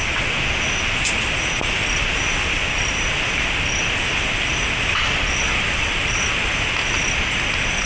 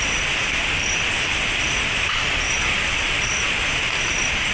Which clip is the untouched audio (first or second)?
first